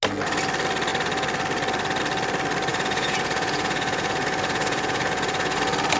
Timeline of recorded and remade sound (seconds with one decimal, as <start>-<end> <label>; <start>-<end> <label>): 0.0-2.7 recorded; 2.7-5.6 remade; 5.6-6.0 recorded

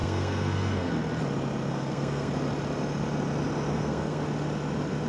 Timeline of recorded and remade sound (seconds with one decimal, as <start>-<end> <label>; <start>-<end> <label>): 0.0-0.9 remade; 0.9-1.7 recorded; 1.7-2.3 remade; 2.3-3.7 recorded; 3.7-4.2 remade; 4.2-5.1 recorded

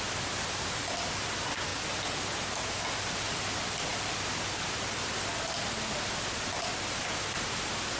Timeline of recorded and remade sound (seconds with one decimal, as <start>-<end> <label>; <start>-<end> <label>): 0.0-1.7 remade; 1.7-3.4 recorded; 3.4-3.9 remade; 3.9-7.1 recorded; 7.1-8.0 remade

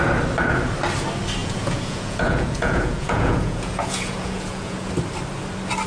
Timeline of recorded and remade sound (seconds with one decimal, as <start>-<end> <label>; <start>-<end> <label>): 0.0-1.4 recorded; 1.4-4.9 remade; 4.9-5.9 recorded

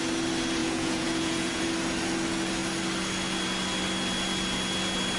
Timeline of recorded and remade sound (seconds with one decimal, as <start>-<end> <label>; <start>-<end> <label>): 0.0-0.6 recorded; 0.6-1.6 remade; 1.6-5.2 recorded

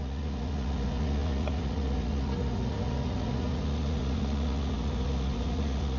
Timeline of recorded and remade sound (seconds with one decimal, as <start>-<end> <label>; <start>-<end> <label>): 0.0-6.0 remade

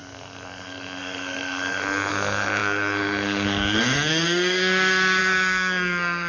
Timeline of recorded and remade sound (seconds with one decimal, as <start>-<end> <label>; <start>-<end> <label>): 0.0-6.3 remade